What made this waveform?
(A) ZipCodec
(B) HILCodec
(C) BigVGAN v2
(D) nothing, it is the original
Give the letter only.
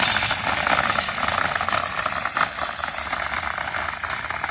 D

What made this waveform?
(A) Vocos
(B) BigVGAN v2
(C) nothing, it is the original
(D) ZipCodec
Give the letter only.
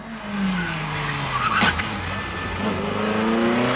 C